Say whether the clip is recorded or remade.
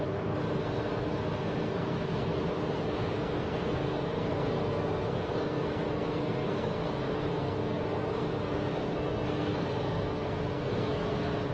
remade